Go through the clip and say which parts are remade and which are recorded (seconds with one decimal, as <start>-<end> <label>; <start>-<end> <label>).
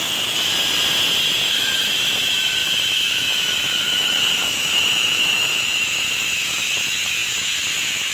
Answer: 0.0-0.5 remade; 0.5-1.5 recorded; 1.5-8.1 remade